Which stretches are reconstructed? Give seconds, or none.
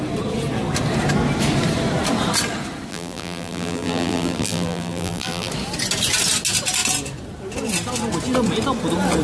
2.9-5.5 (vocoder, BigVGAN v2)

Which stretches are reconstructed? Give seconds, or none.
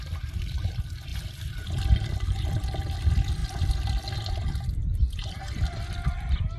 0.0-6.6 (vocoder, BigVGAN v2)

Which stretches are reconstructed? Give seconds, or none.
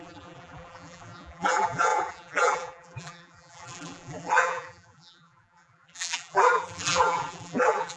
0.0-8.0 (vocoder, BigVGAN v2)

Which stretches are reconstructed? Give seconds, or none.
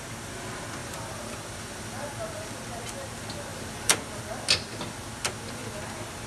0.8-2.6 (vocoder, BigVGAN v2); 3.5-4.2